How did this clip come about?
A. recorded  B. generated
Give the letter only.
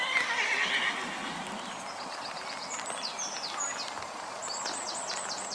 A